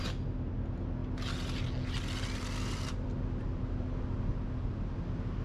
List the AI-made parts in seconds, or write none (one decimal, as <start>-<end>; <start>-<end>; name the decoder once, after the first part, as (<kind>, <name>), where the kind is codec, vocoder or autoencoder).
none